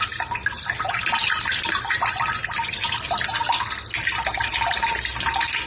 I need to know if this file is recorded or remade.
recorded